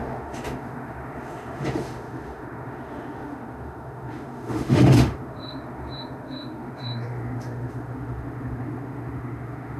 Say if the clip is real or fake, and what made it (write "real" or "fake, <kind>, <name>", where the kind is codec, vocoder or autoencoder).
fake, autoencoder, DAC-VAE